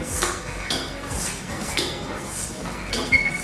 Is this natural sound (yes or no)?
no